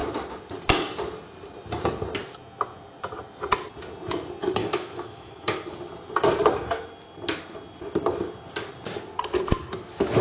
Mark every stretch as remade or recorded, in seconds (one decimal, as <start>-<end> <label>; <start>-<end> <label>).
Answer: 0.0-4.6 recorded; 4.6-5.6 remade; 5.6-10.2 recorded